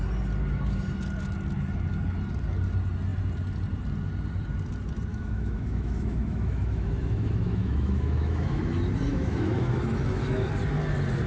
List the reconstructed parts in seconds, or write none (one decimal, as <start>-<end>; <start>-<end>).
5.1-8.6; 9.1-10.5